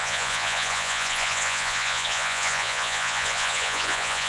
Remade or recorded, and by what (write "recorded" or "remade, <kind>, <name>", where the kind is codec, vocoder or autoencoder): remade, vocoder, Vocos